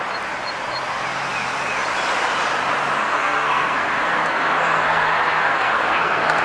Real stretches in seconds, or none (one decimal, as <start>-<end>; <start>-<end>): 0.0-3.0